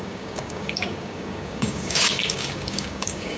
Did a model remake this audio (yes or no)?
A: yes